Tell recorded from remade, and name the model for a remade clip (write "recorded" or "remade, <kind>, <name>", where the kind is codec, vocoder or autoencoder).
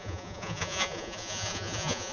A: remade, vocoder, Vocos